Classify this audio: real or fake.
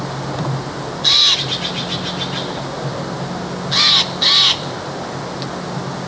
real